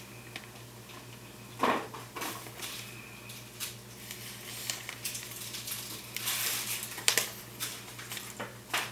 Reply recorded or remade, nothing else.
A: recorded